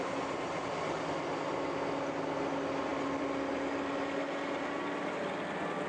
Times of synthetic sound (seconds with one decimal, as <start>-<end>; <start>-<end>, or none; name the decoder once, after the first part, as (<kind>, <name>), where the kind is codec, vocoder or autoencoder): none